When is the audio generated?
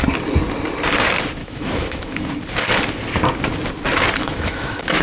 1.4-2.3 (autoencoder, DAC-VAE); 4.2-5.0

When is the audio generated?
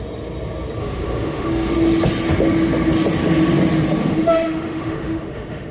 0.8-1.7 (autoencoder, DAC-VAE); 4.0-5.7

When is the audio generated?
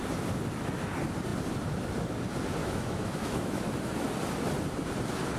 2.6-3.7 (autoencoder, DAC-VAE)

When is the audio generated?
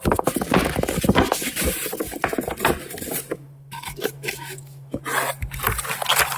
3.3-5.0 (autoencoder, DAC-VAE)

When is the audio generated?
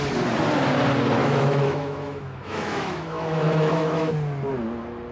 1.2-4.1 (autoencoder, DAC-VAE)